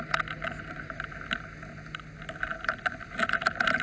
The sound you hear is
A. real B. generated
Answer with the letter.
A